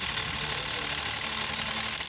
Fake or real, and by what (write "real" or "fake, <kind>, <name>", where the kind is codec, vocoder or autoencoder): real